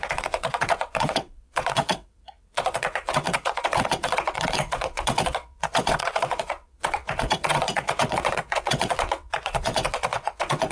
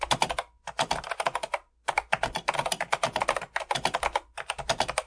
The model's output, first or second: first